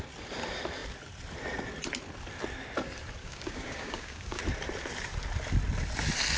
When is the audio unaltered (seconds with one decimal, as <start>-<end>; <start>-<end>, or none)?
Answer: 0.0-3.2; 4.4-6.4